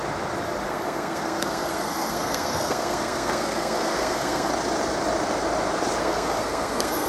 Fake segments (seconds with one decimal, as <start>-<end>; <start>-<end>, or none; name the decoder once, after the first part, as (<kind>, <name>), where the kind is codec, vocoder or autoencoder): 0.7-4.5 (codec, SNAC); 6.0-7.1